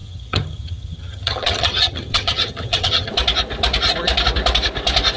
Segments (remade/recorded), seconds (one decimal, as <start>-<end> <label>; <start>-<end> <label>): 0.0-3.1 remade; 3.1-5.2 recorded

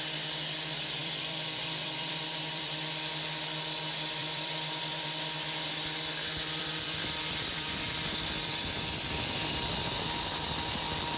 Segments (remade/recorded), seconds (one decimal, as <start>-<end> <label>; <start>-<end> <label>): 0.0-1.0 recorded; 1.0-2.9 remade; 2.9-4.2 recorded; 4.2-9.1 remade; 9.1-11.2 recorded

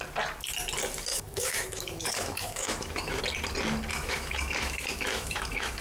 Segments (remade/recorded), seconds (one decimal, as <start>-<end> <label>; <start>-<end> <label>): 0.0-1.1 recorded; 1.1-3.2 remade; 3.2-3.9 recorded; 3.9-5.8 remade